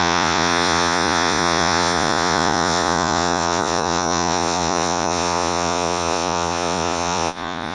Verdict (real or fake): fake